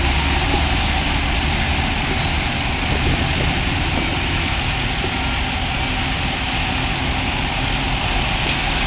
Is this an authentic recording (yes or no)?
yes